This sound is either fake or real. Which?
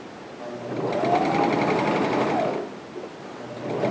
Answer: real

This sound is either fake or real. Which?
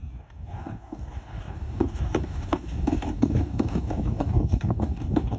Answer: fake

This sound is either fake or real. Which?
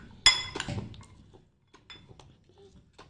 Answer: real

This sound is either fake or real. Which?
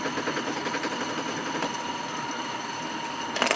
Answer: real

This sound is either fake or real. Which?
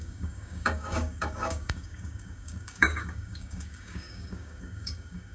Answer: fake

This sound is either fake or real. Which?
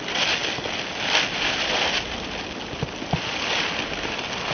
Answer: real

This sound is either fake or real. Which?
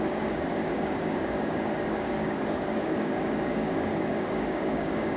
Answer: fake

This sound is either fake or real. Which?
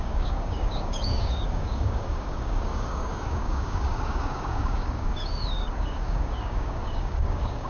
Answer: fake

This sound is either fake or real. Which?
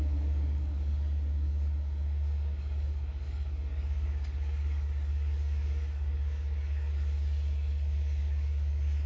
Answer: fake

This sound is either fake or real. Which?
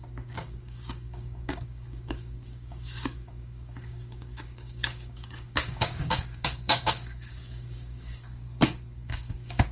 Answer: fake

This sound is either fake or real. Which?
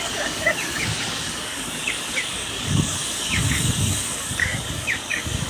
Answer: fake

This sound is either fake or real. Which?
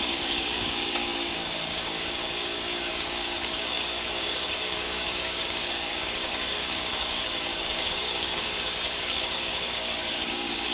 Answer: fake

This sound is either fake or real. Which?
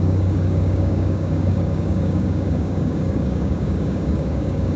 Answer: fake